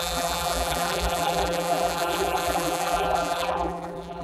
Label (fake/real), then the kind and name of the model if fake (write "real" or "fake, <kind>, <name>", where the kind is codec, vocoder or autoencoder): fake, vocoder, BigVGAN v2